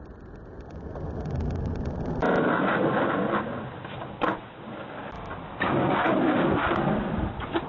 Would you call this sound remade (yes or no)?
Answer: no